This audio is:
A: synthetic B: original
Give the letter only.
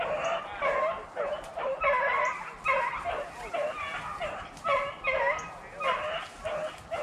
B